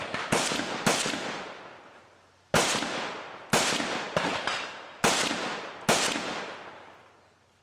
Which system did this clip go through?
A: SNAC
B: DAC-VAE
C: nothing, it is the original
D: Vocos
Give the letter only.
C